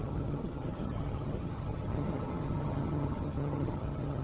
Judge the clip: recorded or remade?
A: remade